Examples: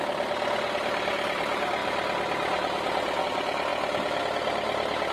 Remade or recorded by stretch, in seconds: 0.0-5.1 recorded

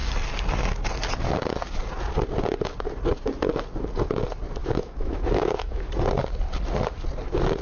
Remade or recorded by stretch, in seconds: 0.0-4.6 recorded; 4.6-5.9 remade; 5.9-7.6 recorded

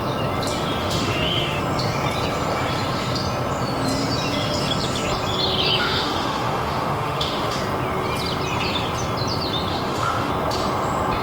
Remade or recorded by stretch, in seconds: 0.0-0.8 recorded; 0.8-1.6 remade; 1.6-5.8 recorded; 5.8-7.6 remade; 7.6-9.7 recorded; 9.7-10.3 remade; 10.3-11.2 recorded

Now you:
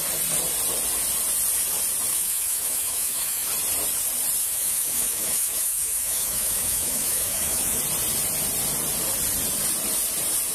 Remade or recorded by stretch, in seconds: 0.0-2.1 recorded; 2.1-3.5 remade; 3.5-4.4 recorded; 4.4-7.8 remade; 7.8-10.5 recorded